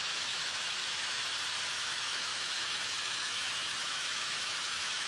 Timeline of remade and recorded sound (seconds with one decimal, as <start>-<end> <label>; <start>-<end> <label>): 0.0-1.2 remade; 1.2-1.7 recorded; 1.7-5.1 remade